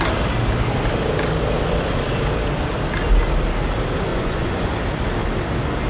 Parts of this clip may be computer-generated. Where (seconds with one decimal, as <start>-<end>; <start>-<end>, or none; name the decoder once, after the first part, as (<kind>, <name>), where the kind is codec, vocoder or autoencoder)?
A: 4.1-4.8 (vocoder, Vocos)